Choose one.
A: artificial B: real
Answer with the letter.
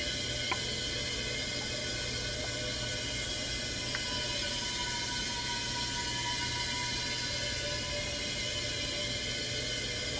B